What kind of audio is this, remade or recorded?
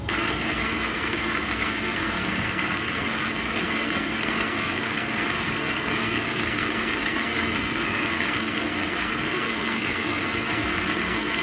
remade